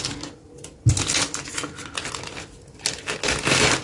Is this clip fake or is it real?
real